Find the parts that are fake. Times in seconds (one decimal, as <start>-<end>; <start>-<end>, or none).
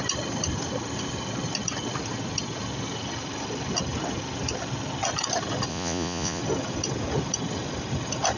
5.7-6.4